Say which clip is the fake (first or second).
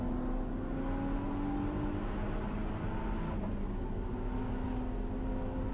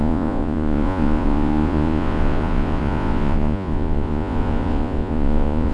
second